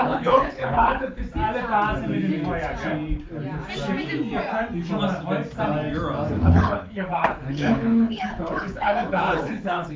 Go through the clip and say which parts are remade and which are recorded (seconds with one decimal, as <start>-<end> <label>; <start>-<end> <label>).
0.0-1.2 remade; 1.2-6.4 recorded; 6.4-10.0 remade